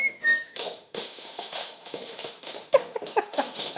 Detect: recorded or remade remade